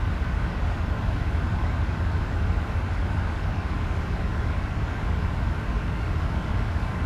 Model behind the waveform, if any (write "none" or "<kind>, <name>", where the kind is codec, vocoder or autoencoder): codec, DAC